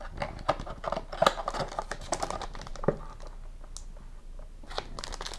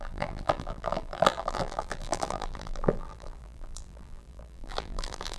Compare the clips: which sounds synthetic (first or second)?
second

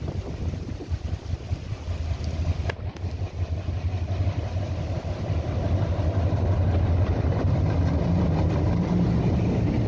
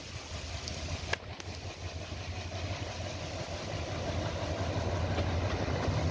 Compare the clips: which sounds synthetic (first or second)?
first